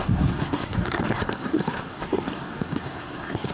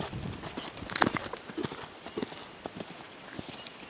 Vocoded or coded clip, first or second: first